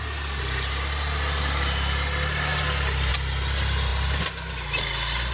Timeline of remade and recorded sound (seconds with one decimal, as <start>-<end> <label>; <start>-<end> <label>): 0.0-5.3 recorded

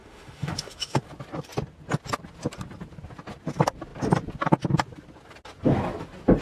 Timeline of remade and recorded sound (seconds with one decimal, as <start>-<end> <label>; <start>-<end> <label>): 0.0-1.0 remade; 1.0-6.4 recorded